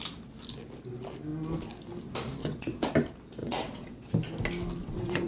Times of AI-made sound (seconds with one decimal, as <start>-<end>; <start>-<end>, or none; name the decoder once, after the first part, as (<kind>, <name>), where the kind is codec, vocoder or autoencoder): 2.4-2.9 (vocoder, WaveNeXt); 3.4-4.1; 4.8-5.3